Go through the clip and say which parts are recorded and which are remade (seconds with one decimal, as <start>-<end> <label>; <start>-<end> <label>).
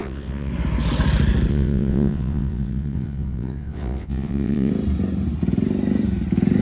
0.0-0.5 remade; 0.5-1.5 recorded; 1.5-4.7 remade; 4.7-6.6 recorded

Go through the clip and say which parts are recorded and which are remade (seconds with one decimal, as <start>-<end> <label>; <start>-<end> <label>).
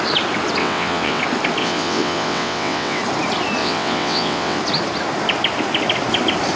0.0-0.6 recorded; 0.6-1.2 remade; 1.2-1.6 recorded; 1.6-3.0 remade; 3.0-3.6 recorded; 3.6-4.6 remade; 4.6-6.6 recorded